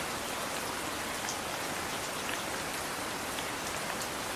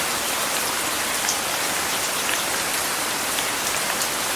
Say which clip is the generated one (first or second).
second